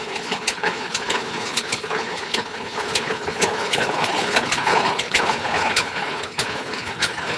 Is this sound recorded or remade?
remade